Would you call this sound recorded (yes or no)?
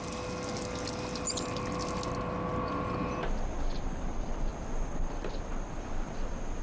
yes